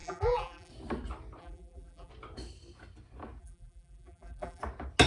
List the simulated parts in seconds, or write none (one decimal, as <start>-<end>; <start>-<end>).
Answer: 0.0-0.7; 1.4-2.1; 3.4-4.6